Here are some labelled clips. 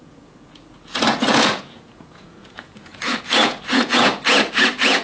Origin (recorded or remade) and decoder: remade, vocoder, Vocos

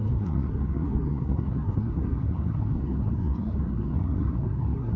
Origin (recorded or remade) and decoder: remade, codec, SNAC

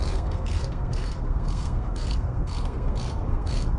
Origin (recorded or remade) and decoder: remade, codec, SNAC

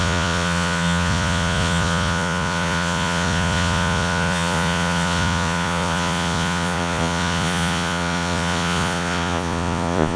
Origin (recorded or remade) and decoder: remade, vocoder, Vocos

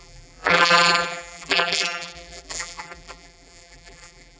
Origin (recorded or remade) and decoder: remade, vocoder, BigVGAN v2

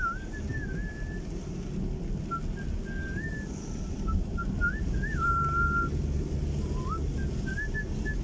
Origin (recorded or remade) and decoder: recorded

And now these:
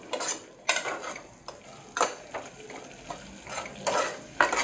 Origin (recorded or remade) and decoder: recorded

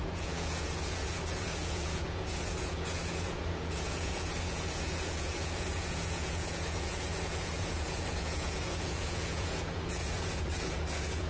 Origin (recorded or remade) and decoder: remade, vocoder, Vocos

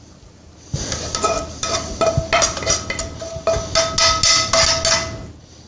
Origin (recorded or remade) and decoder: recorded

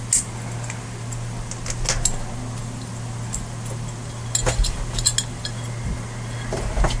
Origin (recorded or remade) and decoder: recorded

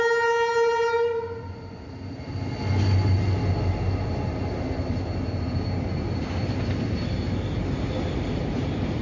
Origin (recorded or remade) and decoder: recorded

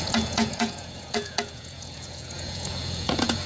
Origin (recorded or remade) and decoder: remade, vocoder, Vocos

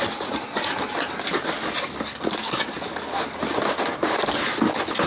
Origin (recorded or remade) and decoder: recorded